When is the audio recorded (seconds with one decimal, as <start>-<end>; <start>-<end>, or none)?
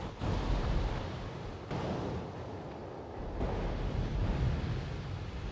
0.0-5.5